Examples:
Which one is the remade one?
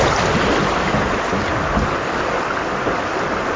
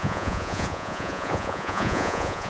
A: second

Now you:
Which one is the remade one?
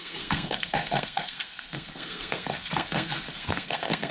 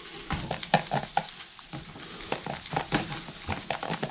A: first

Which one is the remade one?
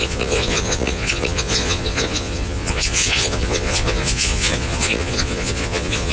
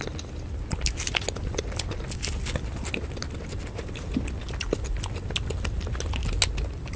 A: first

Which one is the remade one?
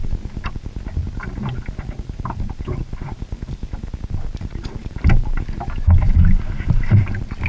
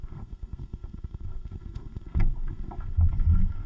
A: second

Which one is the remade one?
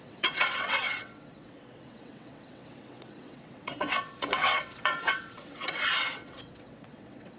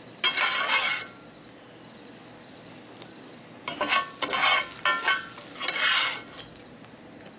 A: first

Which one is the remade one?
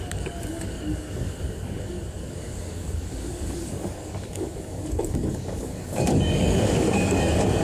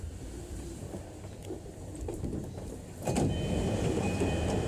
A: first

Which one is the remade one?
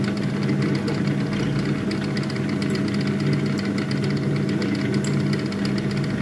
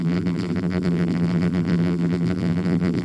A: second